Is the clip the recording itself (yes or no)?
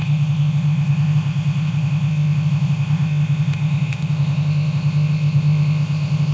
no